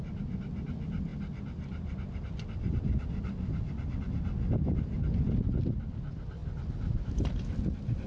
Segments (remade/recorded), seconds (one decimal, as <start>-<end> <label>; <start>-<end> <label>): 0.0-8.1 recorded

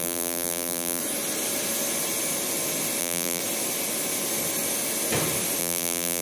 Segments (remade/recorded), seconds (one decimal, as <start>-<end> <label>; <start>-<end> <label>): 0.0-1.0 remade; 1.0-3.0 recorded; 3.0-3.4 remade; 3.4-5.6 recorded; 5.6-6.2 remade

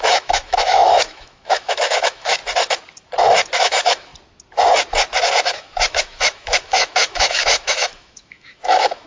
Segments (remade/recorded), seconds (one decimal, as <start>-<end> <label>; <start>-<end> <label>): 0.0-2.4 remade; 2.4-3.6 recorded; 3.6-4.1 remade; 4.1-5.5 recorded; 5.5-9.1 remade

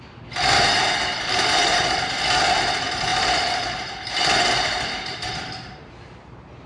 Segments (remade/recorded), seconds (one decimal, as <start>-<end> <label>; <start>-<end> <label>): 0.0-6.7 remade

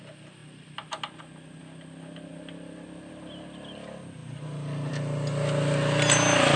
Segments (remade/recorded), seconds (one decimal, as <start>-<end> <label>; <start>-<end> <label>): 0.0-6.6 recorded

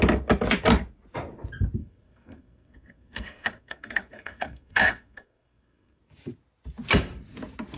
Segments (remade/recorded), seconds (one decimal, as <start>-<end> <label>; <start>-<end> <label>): 0.0-1.8 recorded; 1.8-6.0 remade; 6.0-7.8 recorded